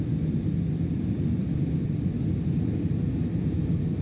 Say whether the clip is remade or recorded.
remade